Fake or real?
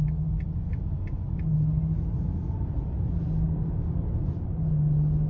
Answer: real